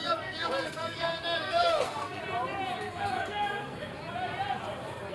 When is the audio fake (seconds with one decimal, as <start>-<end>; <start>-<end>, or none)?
0.0-2.2; 2.8-3.9